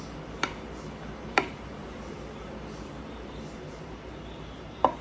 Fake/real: fake